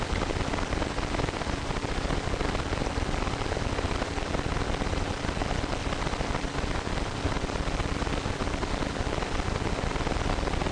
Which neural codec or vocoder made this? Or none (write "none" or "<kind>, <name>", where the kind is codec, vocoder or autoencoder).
vocoder, BigVGAN v2